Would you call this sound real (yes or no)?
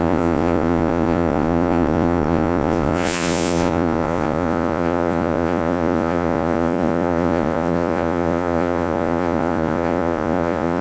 no